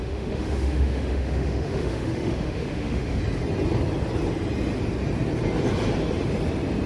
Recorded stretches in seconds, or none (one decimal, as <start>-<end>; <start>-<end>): 3.2-6.9

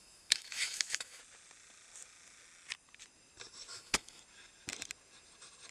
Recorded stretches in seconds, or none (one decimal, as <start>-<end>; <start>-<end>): 1.2-3.7; 4.2-5.7

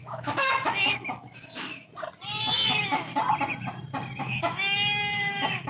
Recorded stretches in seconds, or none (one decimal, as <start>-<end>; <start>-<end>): 1.9-2.5; 3.1-4.2

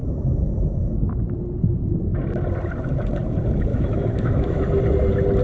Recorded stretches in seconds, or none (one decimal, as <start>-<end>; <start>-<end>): 1.0-3.7; 4.6-5.4

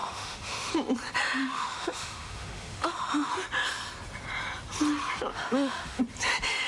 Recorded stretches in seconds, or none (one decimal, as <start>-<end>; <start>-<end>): 0.7-1.4; 3.3-5.3; 6.0-6.7

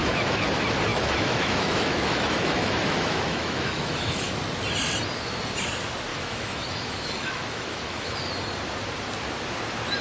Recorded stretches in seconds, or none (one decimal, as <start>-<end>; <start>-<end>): 0.5-0.9; 4.3-6.1; 8.3-10.0